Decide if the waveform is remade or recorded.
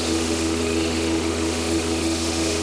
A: remade